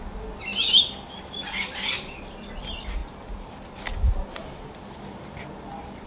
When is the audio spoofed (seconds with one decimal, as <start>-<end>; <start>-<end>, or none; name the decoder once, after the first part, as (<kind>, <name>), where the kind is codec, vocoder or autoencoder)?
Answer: none